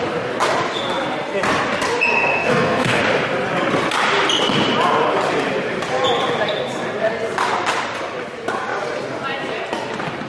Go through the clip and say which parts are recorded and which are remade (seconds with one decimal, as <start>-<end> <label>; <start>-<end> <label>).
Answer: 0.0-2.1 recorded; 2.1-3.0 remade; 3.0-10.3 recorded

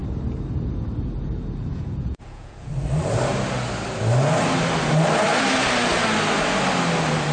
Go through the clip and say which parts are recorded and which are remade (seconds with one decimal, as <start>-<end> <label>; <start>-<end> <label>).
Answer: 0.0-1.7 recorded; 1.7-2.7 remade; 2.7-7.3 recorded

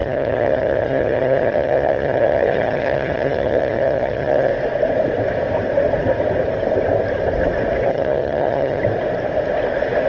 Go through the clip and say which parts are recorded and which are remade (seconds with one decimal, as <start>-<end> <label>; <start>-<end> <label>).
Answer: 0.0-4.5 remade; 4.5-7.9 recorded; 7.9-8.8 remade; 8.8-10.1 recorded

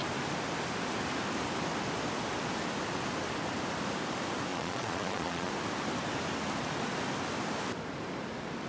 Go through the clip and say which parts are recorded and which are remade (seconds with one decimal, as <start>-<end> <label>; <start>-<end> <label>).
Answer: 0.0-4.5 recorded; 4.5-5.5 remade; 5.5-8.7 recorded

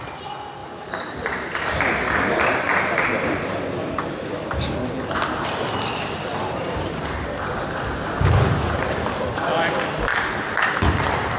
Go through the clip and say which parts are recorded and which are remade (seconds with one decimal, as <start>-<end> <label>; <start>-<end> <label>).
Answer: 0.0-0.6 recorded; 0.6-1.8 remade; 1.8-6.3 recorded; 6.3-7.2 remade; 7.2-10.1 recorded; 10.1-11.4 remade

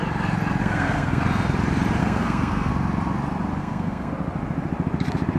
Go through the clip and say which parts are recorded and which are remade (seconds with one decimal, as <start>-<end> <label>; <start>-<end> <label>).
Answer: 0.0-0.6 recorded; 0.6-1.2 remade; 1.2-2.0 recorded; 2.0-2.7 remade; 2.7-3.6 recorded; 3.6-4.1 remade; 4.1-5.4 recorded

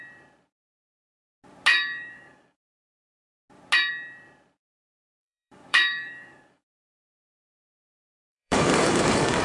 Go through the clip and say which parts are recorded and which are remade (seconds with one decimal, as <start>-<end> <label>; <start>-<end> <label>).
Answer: 0.0-1.7 recorded; 1.7-2.8 remade; 2.8-4.9 recorded; 4.9-9.4 remade

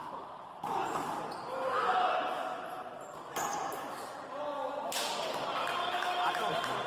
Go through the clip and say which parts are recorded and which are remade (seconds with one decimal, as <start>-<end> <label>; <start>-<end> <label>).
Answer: 0.0-5.8 recorded; 5.8-6.5 remade; 6.5-6.9 recorded